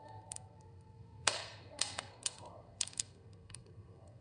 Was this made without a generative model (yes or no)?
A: no